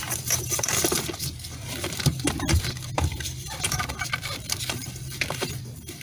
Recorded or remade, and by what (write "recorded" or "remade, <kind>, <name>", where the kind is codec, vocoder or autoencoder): remade, vocoder, BigVGAN v2